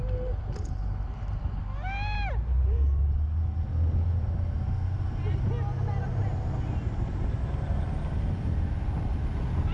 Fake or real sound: real